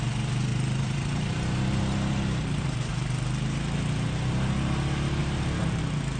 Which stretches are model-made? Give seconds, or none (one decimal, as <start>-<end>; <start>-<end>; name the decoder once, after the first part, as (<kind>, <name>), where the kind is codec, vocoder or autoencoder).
0.5-2.9 (vocoder, BigVGAN v2); 5.2-5.8